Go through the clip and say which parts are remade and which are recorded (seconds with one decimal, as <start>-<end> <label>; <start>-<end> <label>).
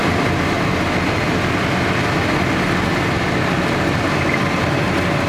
0.0-5.3 recorded